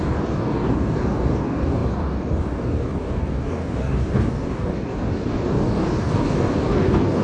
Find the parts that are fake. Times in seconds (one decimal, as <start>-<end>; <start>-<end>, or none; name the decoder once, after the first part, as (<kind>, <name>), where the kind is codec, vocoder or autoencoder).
0.0-7.2 (codec, DAC)

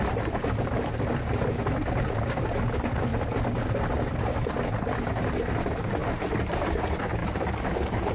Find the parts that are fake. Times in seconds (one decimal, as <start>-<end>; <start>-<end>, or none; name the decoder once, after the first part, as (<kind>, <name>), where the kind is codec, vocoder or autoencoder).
7.2-8.1 (codec, DAC)

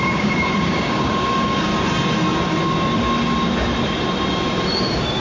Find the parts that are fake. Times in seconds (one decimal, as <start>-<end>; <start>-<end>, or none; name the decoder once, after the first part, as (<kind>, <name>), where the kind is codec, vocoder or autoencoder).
0.0-1.7 (codec, DAC); 4.8-5.2

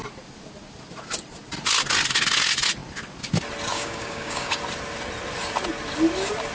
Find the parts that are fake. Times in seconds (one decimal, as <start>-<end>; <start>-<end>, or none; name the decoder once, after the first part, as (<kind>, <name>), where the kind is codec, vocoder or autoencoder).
3.7-4.6 (codec, DAC)

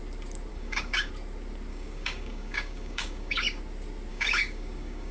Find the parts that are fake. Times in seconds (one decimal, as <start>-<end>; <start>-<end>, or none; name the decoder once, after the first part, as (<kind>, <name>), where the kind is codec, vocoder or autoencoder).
0.5-1.1 (codec, DAC); 1.7-3.6; 4.1-5.1

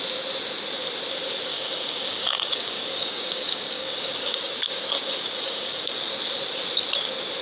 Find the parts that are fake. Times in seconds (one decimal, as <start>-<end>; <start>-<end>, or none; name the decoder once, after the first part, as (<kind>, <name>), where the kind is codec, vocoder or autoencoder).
1.5-5.9 (codec, DAC)

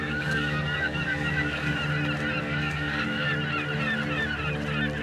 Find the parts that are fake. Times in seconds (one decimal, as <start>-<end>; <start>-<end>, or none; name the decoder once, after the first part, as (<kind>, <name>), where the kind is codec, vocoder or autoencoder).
0.0-1.8 (codec, DAC); 2.4-3.3

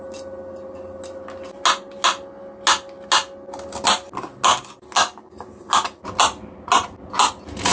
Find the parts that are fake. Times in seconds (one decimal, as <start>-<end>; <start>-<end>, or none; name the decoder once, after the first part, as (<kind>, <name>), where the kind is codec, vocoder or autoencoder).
none